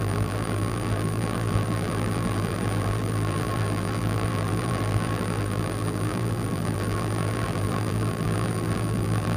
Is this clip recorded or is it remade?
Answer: remade